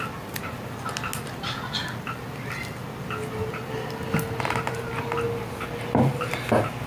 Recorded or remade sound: recorded